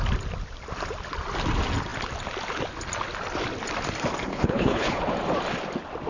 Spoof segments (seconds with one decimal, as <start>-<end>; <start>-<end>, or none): 4.3-5.0